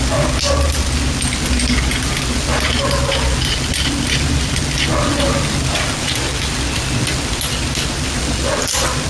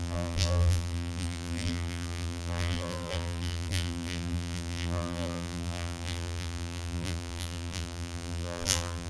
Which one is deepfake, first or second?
second